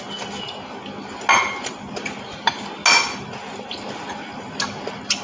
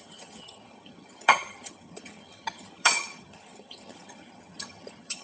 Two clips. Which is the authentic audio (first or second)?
first